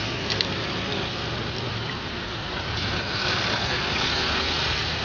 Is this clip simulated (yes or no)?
yes